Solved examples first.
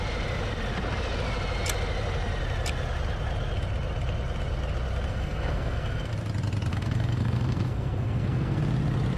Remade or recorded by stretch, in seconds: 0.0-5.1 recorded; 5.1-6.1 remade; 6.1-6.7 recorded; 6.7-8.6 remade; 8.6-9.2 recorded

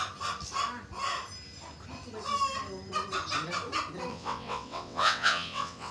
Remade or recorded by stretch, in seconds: 0.0-4.1 recorded; 4.1-5.9 remade

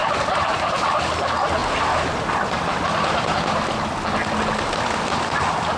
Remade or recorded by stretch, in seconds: 0.0-0.7 remade; 0.7-5.8 recorded

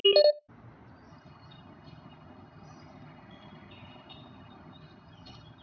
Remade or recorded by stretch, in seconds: 0.0-1.1 recorded; 1.1-5.6 remade

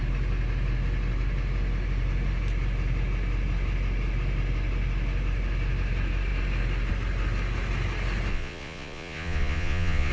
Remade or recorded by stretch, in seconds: 0.0-8.3 recorded; 8.3-10.1 remade

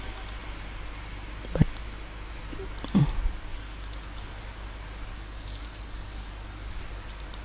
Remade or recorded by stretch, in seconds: 0.0-3.5 recorded; 3.5-4.3 remade; 4.3-5.1 recorded; 5.1-6.8 remade; 6.8-7.4 recorded

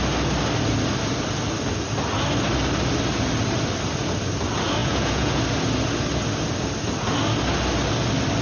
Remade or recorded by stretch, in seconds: 0.0-4.8 recorded; 4.8-5.4 remade; 5.4-8.4 recorded

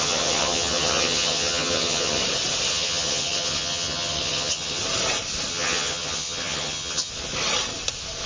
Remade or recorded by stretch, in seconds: 0.0-2.2 remade; 2.2-2.7 recorded; 2.7-4.8 remade; 4.8-5.5 recorded; 5.5-7.1 remade; 7.1-8.3 recorded